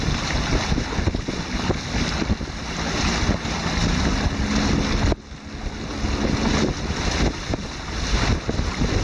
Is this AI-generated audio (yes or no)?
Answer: no